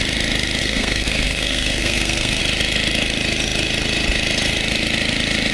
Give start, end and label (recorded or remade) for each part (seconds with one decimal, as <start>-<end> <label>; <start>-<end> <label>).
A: 0.0-0.6 recorded; 0.6-2.4 remade; 2.4-5.5 recorded